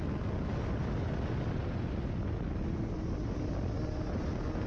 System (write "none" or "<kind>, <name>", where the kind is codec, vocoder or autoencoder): none